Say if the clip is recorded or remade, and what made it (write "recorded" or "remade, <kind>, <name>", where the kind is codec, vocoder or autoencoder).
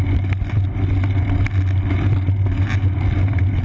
recorded